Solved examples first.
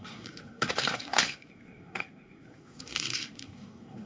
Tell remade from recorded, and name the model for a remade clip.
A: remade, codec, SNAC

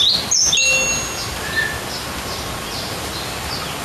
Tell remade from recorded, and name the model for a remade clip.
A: recorded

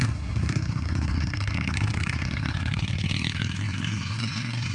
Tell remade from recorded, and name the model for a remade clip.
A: remade, codec, SNAC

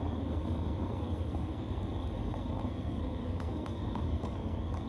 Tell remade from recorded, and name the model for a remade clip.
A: remade, codec, SNAC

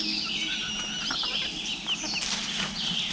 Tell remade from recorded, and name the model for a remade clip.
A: recorded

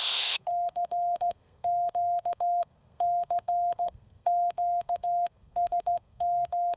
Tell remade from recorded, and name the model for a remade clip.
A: remade, codec, SNAC